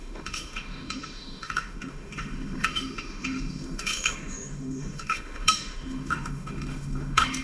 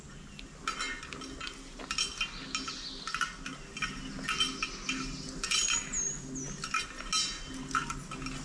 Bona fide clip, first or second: second